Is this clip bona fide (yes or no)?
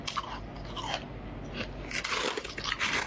yes